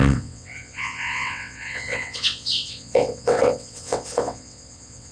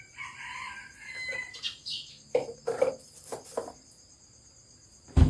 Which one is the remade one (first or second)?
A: first